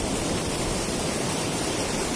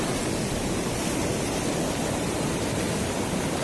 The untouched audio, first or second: second